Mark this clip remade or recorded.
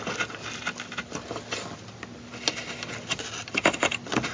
recorded